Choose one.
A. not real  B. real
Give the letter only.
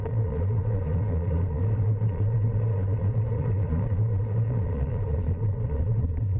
A